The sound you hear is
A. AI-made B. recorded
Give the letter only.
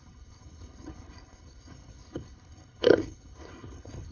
A